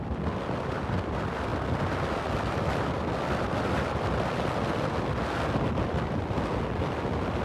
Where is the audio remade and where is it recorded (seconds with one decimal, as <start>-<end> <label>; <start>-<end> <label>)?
0.0-7.4 recorded